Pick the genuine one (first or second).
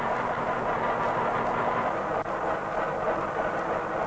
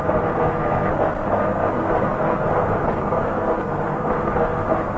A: first